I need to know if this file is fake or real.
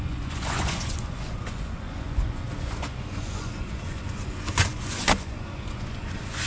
fake